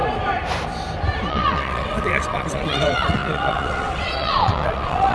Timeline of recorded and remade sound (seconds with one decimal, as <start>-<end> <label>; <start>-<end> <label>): 0.0-1.3 recorded; 1.3-5.1 remade

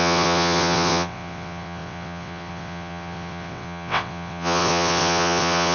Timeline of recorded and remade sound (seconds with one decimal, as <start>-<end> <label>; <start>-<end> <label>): 0.0-5.7 remade

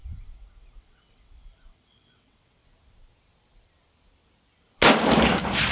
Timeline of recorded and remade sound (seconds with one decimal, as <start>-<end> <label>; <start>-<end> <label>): 0.0-2.6 remade; 2.6-5.7 recorded

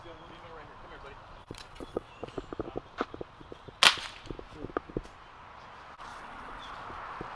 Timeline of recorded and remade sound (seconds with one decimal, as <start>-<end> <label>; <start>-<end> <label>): 0.0-1.4 recorded; 1.4-2.1 remade; 2.1-6.1 recorded; 6.1-6.6 remade; 6.6-7.4 recorded